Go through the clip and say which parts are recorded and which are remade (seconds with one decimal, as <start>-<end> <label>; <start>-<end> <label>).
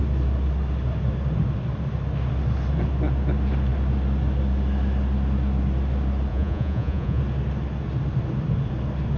0.0-6.3 recorded; 6.3-7.2 remade; 7.2-9.2 recorded